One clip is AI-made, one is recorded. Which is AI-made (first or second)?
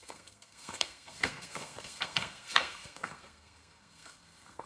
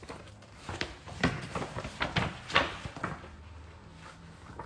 first